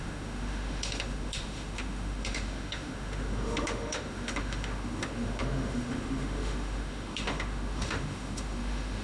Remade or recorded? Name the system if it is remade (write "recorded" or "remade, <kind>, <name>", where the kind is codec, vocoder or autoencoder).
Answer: remade, autoencoder, DAC-VAE